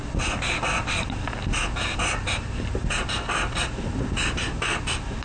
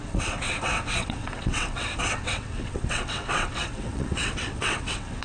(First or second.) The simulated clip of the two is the second